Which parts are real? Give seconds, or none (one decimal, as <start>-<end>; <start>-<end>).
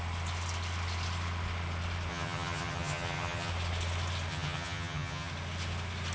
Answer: 0.0-2.1; 3.5-4.3; 5.3-6.1